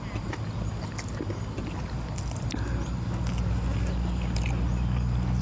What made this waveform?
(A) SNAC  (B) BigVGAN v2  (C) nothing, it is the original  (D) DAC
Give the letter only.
C